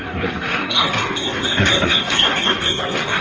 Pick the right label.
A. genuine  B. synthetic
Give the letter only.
B